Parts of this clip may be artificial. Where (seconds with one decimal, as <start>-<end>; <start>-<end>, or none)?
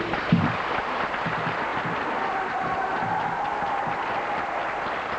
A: none